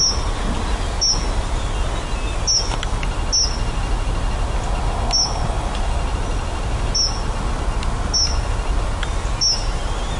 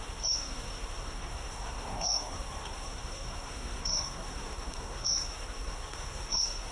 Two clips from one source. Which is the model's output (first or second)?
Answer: second